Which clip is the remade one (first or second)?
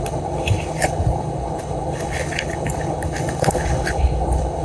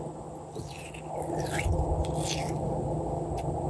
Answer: first